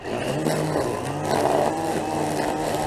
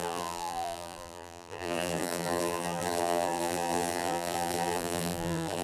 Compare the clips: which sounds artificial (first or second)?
second